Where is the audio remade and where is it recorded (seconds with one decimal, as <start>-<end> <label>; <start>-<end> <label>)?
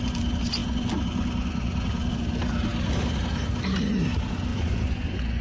0.0-4.5 recorded; 4.5-5.4 remade